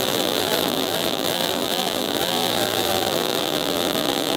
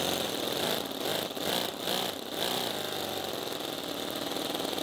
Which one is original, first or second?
second